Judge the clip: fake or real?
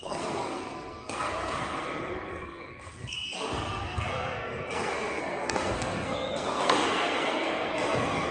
fake